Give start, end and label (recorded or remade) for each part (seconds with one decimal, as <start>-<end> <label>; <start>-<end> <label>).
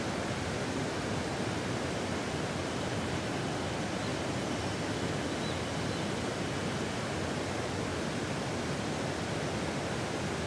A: 0.0-10.5 recorded